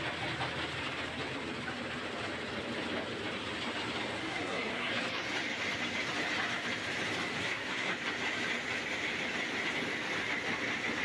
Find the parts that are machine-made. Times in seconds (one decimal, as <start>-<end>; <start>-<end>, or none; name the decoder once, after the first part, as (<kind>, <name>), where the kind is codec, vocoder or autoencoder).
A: 4.2-4.9 (codec, SNAC); 7.4-7.9